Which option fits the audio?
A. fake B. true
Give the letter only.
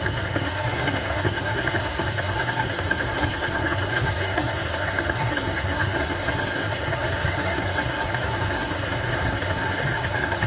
A